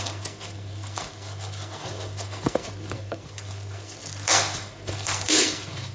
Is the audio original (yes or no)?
no